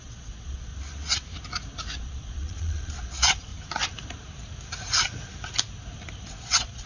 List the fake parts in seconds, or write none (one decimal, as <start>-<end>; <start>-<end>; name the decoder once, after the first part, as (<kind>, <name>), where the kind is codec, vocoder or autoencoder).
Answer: 0.0-0.7 (vocoder, Vocos); 2.0-3.5; 6.3-6.9